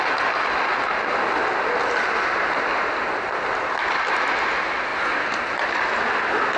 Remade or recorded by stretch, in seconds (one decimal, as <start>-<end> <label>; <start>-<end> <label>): 0.0-6.6 recorded